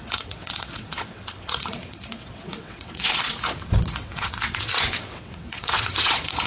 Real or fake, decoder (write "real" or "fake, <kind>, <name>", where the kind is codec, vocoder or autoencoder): fake, vocoder, WaveNeXt